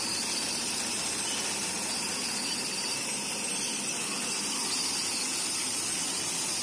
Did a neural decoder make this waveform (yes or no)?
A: no